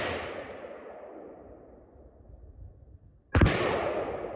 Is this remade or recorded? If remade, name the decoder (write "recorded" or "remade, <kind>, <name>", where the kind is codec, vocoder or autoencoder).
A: recorded